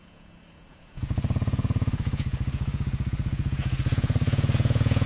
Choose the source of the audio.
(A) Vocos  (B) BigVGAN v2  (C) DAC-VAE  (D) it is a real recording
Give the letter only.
A